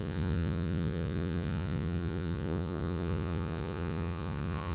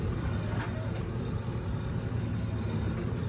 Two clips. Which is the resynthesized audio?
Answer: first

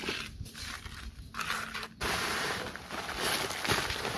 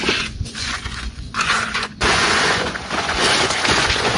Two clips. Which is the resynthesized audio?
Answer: second